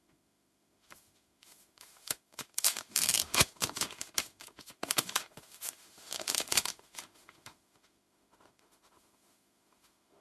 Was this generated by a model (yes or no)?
yes